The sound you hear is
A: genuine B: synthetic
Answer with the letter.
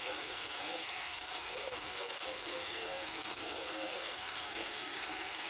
B